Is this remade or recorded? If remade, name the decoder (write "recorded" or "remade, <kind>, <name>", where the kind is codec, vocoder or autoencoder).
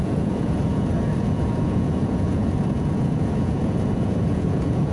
remade, vocoder, Vocos